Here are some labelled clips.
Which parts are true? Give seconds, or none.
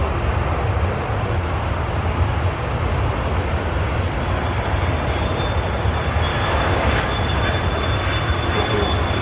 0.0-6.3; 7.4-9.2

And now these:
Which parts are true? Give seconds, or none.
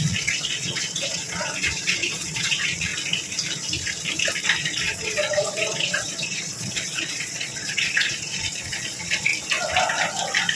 2.9-4.6; 9.3-10.6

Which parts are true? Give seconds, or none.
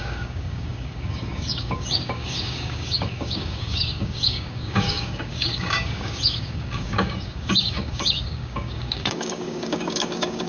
none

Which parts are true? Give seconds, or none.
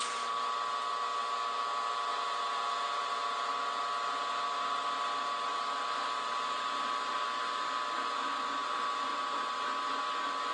0.0-2.1; 3.5-10.5